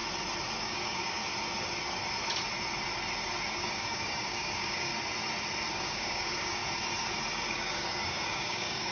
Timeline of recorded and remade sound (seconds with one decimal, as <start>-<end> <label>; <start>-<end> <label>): 0.0-0.6 recorded; 0.6-1.2 remade; 1.2-3.5 recorded; 3.5-4.9 remade; 4.9-5.7 recorded; 5.7-6.6 remade; 6.6-7.5 recorded; 7.5-8.9 remade